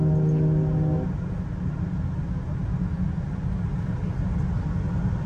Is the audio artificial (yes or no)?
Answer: no